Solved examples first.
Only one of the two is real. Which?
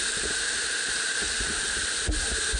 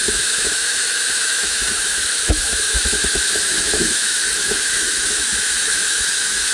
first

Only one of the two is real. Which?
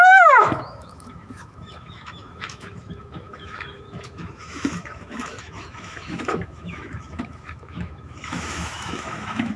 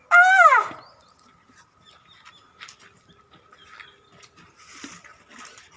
second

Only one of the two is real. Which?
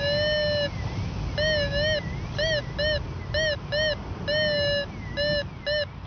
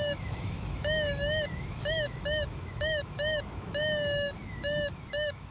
first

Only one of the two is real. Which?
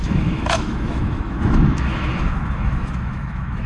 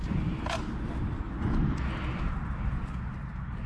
second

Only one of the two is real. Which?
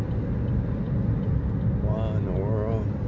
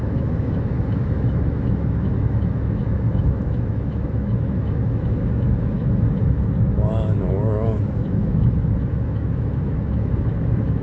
first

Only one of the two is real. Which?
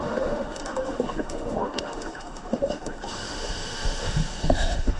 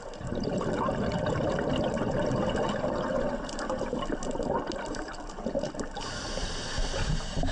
second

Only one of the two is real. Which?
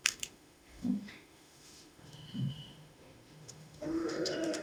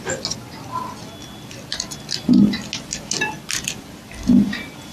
second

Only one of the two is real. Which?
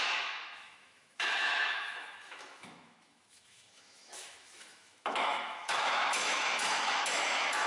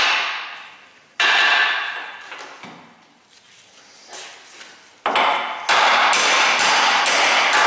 second